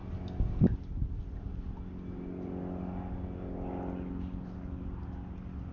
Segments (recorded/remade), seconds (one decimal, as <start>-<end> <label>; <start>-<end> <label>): 0.0-5.7 recorded